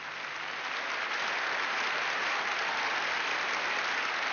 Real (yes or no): yes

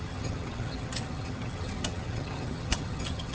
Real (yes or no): no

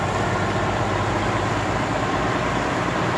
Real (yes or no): yes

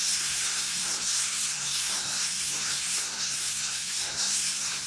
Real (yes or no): no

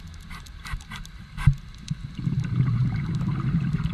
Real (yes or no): yes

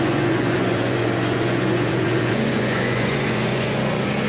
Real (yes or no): no